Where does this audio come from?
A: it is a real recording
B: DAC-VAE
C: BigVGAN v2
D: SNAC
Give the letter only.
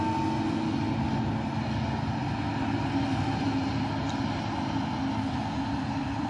A